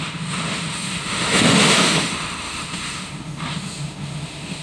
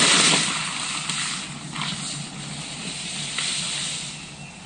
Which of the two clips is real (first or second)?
second